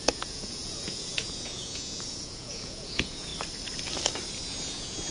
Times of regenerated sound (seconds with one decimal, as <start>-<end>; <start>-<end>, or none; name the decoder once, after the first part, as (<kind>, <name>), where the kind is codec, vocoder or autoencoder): 0.0-3.3 (vocoder, Vocos); 4.3-5.1